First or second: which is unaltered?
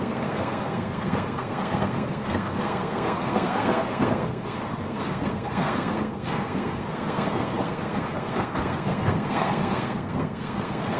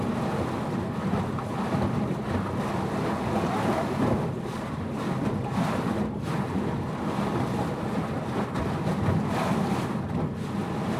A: second